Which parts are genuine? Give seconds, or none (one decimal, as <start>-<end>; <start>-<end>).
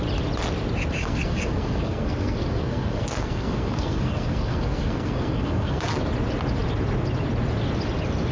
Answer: 0.0-1.0; 6.0-8.3